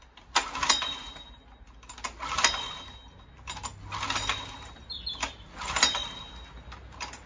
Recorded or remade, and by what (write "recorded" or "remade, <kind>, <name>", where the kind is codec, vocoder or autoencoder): recorded